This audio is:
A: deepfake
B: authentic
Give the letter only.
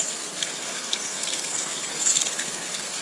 A